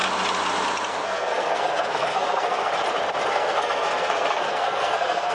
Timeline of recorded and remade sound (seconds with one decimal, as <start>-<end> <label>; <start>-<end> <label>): 0.0-0.9 recorded; 0.9-2.7 remade; 2.7-3.3 recorded; 3.3-5.3 remade